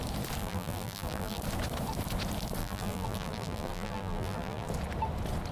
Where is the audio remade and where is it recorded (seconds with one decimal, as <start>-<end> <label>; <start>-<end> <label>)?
0.0-0.4 recorded; 0.4-1.4 remade; 1.4-2.6 recorded; 2.6-4.7 remade; 4.7-5.5 recorded